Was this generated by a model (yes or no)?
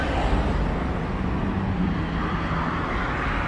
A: no